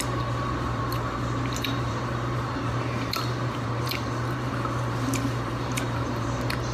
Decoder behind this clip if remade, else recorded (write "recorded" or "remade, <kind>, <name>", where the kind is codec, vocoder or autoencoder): remade, vocoder, BigVGAN v2